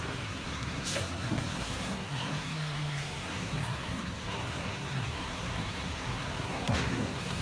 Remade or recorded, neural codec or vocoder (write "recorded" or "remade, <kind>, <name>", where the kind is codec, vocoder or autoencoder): remade, codec, SNAC